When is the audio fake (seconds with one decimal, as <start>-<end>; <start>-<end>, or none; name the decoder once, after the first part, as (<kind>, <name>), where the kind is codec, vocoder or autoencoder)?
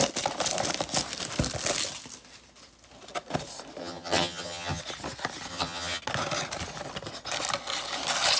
3.8-4.8 (vocoder, HiFi-GAN); 5.5-6.0